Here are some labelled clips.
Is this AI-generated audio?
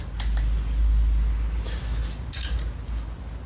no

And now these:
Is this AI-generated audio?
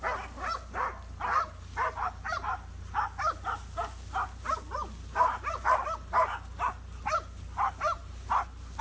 no